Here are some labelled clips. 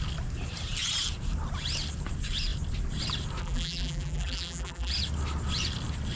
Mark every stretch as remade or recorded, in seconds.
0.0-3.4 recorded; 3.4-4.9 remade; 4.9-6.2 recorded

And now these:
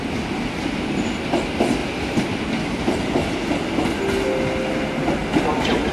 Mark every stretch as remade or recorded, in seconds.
0.0-5.2 recorded; 5.2-5.9 remade